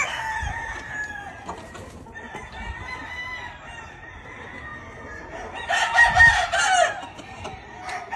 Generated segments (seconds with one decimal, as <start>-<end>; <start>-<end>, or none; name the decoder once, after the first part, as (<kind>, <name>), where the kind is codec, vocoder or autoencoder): none